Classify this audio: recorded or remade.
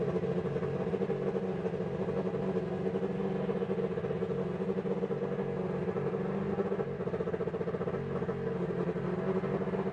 recorded